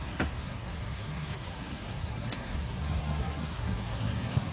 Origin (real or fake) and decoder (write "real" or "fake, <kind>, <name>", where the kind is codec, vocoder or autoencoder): fake, codec, SNAC